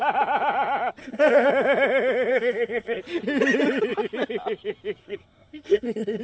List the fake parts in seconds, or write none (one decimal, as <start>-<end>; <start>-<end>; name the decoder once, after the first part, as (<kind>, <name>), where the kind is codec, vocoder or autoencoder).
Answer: 1.0-1.5 (codec, SNAC); 2.3-3.0; 5.0-6.2